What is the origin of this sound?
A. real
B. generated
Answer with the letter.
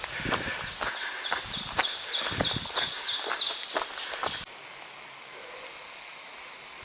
A